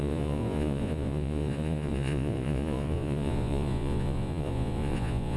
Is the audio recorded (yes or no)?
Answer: no